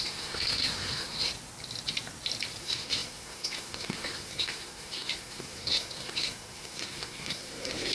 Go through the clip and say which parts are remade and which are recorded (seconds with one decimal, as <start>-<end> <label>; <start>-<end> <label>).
0.0-1.3 remade; 1.3-2.6 recorded; 2.6-7.9 remade